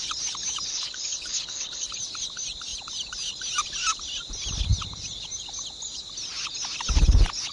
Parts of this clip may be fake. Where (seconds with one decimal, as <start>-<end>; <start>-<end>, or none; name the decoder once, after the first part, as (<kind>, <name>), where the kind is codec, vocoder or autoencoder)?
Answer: 0.7-1.9 (codec, HILCodec)